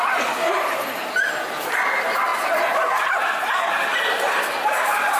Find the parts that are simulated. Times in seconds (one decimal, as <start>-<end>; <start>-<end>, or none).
none